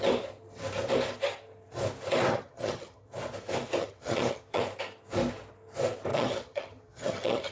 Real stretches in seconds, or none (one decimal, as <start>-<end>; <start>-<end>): 0.0-2.3; 3.1-3.8; 4.6-6.1